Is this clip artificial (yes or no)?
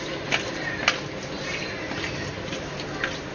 no